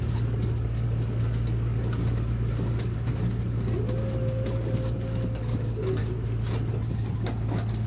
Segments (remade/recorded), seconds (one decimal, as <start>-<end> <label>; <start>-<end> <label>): 0.0-6.0 remade; 6.0-6.9 recorded; 6.9-7.9 remade